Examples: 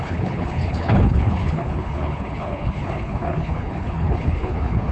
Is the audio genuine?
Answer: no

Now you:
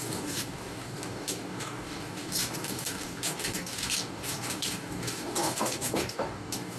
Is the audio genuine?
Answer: no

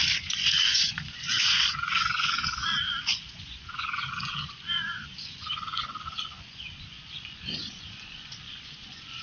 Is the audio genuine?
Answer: no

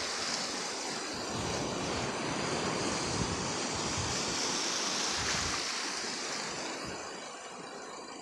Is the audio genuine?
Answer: yes